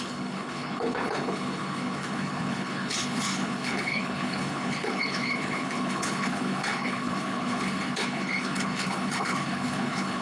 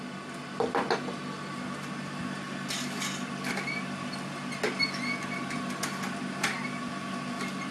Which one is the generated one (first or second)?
first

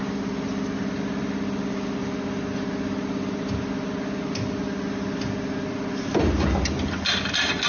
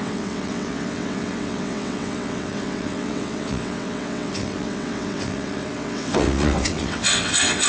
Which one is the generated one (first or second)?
second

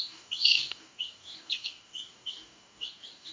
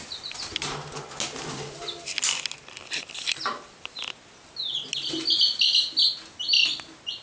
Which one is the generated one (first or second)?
first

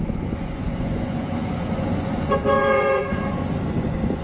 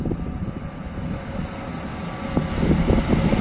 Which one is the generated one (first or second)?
first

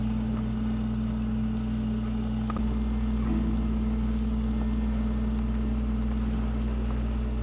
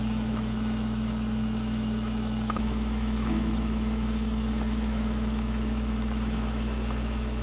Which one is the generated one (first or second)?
second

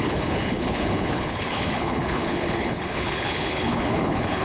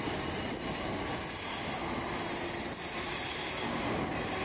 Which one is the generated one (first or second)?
first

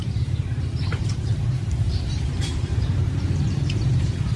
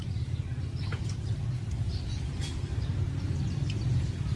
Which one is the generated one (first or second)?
first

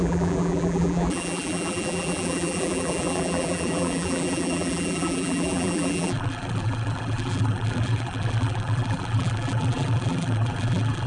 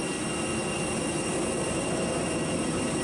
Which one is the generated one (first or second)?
first